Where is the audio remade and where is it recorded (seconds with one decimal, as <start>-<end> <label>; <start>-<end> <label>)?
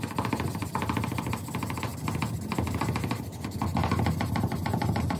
0.0-5.2 recorded